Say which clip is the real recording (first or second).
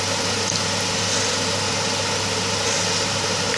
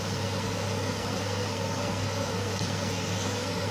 first